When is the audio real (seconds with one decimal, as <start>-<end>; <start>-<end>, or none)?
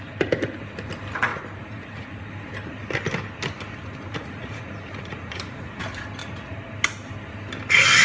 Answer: 0.0-1.3; 2.3-4.1; 5.8-6.2; 6.7-8.0